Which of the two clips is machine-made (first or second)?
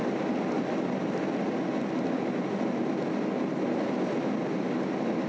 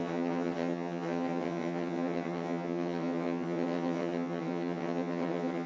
second